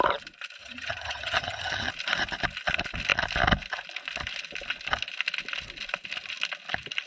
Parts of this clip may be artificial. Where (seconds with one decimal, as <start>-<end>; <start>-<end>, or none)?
0.6-1.9